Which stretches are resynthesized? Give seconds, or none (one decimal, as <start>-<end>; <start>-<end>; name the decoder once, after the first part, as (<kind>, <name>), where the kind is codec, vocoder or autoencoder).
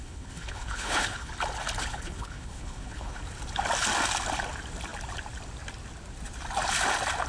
0.0-1.3 (codec, HILCodec); 1.8-3.2